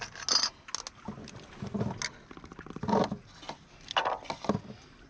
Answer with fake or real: real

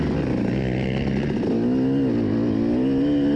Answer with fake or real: real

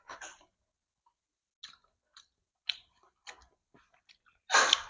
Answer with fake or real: real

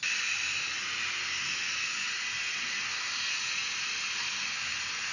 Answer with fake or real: real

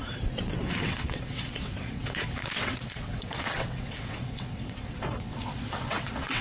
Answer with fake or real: fake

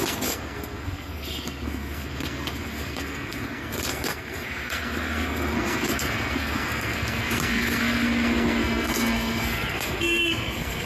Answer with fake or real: fake